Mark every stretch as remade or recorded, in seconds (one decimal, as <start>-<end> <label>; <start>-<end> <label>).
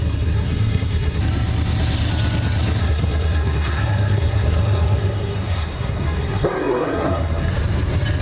0.0-1.2 remade; 1.2-2.8 recorded; 2.8-7.5 remade; 7.5-8.2 recorded